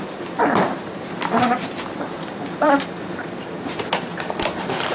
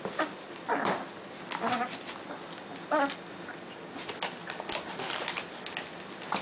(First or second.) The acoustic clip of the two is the second